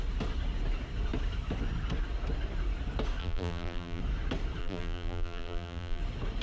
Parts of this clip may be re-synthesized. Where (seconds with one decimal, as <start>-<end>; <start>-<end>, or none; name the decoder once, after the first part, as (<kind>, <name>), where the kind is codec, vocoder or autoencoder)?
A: 3.2-4.0 (vocoder, BigVGAN v2); 4.6-6.0

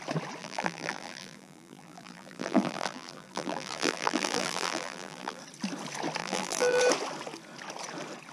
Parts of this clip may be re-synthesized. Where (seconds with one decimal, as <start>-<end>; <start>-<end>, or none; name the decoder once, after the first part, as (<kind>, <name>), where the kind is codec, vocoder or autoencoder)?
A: 0.4-5.4 (vocoder, BigVGAN v2); 6.2-6.8

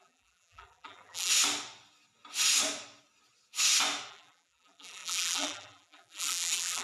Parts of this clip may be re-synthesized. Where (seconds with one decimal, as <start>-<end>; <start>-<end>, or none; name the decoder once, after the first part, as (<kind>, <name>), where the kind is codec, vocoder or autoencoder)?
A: 0.0-1.3 (vocoder, BigVGAN v2); 4.1-6.8

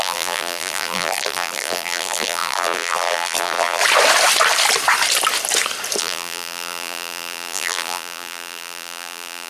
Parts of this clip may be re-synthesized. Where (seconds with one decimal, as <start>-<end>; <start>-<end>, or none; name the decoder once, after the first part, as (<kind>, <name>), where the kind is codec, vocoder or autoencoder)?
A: 0.0-3.8 (vocoder, BigVGAN v2); 6.0-9.5